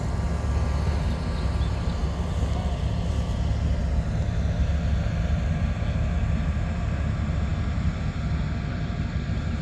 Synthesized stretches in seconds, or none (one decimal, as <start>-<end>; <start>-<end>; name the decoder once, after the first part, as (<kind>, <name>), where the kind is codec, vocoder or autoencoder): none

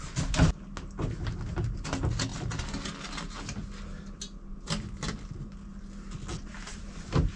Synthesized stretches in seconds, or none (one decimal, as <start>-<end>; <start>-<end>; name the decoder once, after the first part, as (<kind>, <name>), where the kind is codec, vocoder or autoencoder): none

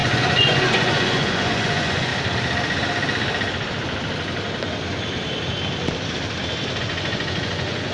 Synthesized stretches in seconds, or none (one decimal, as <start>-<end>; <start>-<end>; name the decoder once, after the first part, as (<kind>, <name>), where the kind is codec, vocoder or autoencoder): 0.0-2.1 (vocoder, Vocos); 6.8-7.9

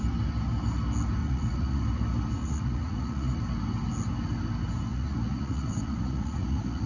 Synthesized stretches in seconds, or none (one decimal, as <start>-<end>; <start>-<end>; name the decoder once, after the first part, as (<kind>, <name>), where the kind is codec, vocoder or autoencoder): 1.2-1.8 (vocoder, Vocos); 2.4-3.4; 4.9-6.9